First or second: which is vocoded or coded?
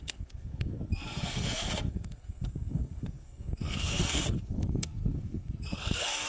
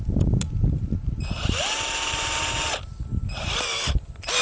first